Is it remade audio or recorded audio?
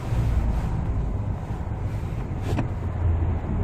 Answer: recorded